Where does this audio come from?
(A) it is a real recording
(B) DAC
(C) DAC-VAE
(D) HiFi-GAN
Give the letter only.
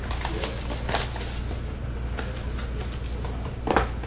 A